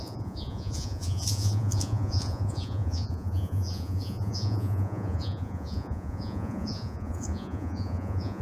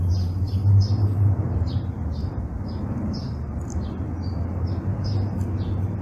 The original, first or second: second